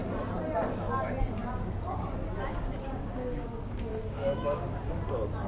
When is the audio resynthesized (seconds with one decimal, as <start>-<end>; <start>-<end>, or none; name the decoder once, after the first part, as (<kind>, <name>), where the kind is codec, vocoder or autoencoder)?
2.5-4.8 (codec, DAC)